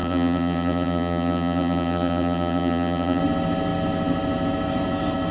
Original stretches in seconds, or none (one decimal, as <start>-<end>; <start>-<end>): 3.2-5.3